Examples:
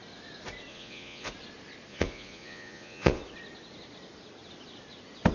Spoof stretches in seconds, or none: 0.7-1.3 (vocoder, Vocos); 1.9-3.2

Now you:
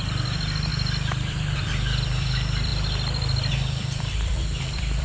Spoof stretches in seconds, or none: 0.0-5.0 (vocoder, BigVGAN v2)

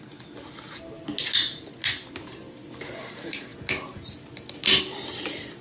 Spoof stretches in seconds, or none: none

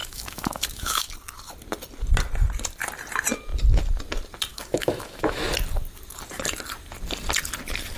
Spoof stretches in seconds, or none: 0.0-1.1 (autoencoder, DAC-VAE); 4.5-5.4

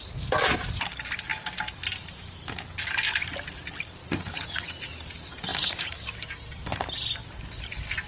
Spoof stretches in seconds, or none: 4.0-4.9 (vocoder, Vocos); 5.5-6.0

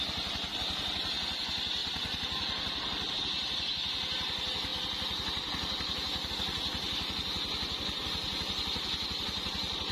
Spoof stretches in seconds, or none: 1.8-3.1 (vocoder, BigVGAN v2)

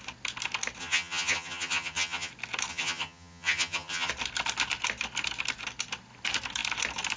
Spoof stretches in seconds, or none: 0.8-2.3 (vocoder, HiFi-GAN); 2.7-4.1